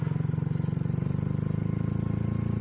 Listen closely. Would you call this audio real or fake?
real